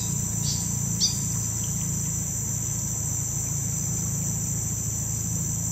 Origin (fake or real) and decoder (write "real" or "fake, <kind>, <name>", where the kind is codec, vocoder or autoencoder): real